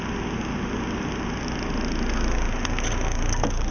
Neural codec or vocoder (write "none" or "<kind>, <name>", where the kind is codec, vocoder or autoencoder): none